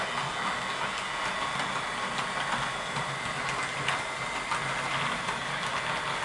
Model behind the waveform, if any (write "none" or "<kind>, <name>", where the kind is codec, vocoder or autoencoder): none